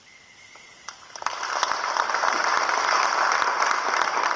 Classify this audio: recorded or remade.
recorded